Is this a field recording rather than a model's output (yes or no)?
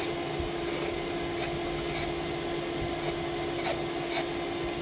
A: yes